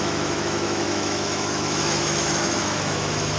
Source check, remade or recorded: remade